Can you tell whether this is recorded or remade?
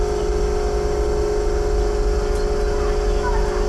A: recorded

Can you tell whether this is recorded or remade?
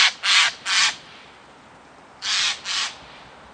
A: recorded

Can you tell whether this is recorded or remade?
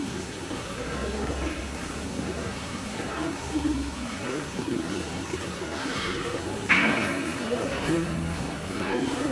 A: remade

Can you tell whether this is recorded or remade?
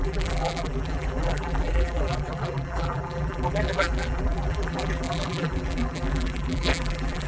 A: remade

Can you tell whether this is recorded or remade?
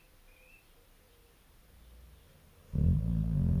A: recorded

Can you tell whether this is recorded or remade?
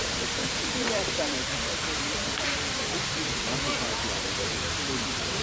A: remade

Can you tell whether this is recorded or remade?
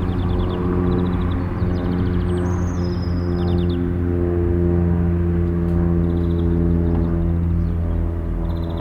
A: recorded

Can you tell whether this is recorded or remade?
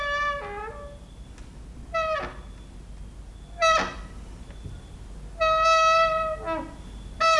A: recorded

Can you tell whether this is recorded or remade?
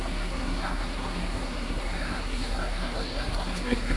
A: remade